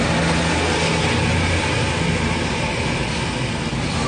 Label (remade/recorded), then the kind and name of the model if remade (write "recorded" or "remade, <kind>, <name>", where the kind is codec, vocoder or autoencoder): recorded